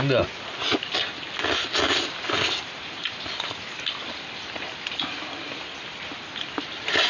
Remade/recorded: recorded